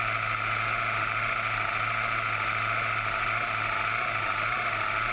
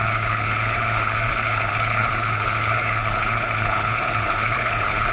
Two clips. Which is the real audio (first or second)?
first